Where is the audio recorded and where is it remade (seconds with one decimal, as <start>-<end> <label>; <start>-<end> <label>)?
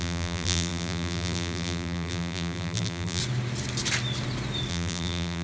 0.0-3.2 remade; 3.2-4.7 recorded; 4.7-5.4 remade